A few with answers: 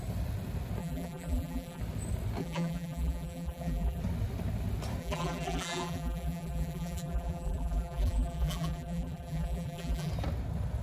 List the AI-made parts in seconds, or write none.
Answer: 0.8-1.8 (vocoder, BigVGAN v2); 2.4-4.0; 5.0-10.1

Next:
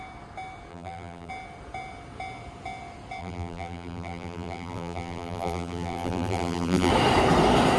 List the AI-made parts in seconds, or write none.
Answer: 0.7-1.3 (vocoder, BigVGAN v2); 3.2-6.9

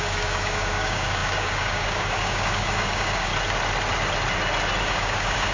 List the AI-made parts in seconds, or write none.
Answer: 0.0-3.3 (codec, DAC); 4.8-5.5

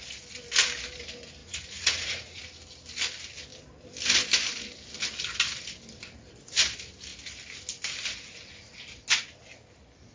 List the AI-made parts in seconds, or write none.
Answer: 1.4-2.4 (vocoder, Vocos)

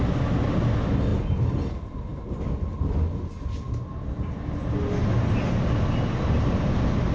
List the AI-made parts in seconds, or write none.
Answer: none

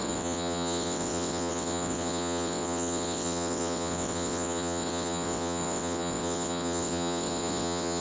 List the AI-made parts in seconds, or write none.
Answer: 0.0-8.0 (vocoder, WaveNeXt)